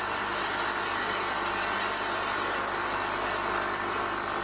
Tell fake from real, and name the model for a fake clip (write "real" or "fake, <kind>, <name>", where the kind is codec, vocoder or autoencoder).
real